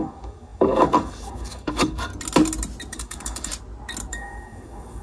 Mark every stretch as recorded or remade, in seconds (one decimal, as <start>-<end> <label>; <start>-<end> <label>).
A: 0.0-2.1 remade; 2.1-2.9 recorded; 2.9-3.5 remade; 3.5-4.1 recorded; 4.1-5.0 remade